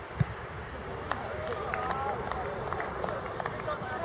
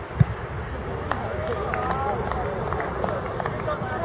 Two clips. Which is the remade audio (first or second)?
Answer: first